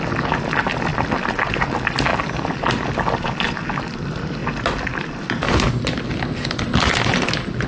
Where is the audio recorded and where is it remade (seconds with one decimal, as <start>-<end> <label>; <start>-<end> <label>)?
0.0-7.7 recorded